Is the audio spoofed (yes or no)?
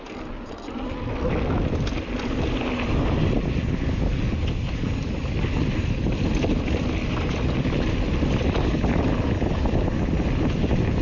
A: no